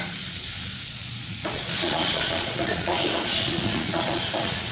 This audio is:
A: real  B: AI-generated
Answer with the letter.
B